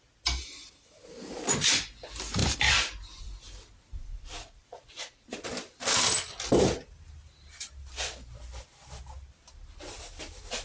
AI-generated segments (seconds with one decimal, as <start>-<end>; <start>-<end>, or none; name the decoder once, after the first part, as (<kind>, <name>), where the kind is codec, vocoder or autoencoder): 2.4-6.0 (vocoder, BigVGAN v2)